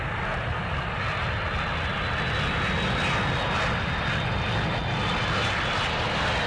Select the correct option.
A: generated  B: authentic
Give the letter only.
B